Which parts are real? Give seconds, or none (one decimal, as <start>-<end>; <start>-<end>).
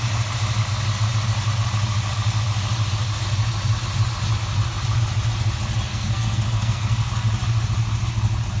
0.0-5.9; 7.1-8.6